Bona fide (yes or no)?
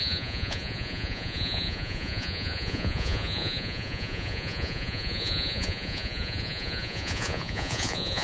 no